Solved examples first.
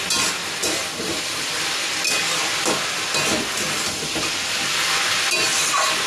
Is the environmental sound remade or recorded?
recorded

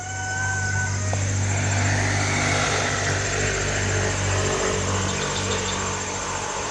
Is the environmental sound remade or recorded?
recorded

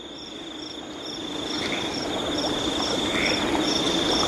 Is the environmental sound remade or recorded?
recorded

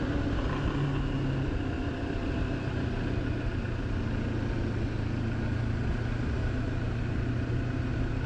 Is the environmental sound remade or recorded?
recorded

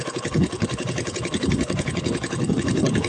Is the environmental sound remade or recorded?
remade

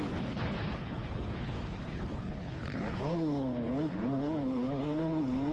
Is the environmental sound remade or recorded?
remade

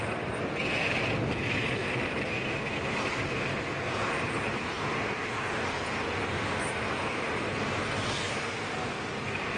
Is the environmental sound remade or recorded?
recorded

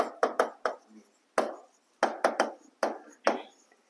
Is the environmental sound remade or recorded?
recorded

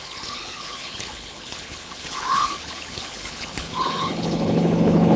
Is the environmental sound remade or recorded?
remade